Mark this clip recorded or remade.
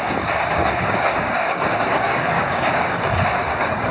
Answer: remade